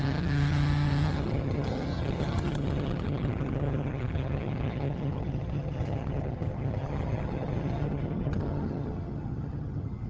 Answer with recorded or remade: remade